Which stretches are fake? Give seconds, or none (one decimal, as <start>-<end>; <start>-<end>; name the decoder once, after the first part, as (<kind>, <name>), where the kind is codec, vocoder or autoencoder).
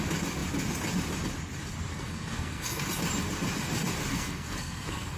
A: 1.9-2.8 (codec, SNAC); 4.1-5.2